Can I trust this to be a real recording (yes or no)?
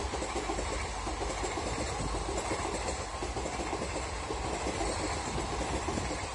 yes